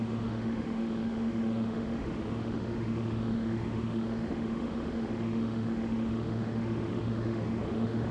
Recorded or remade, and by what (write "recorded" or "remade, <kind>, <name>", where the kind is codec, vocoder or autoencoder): remade, autoencoder, DAC-VAE